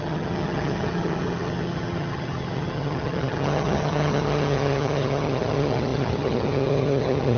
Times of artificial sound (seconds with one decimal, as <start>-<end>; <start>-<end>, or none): 0.0-7.4